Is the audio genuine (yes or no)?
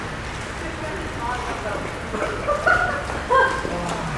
yes